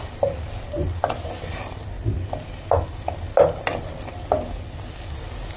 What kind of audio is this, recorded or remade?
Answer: recorded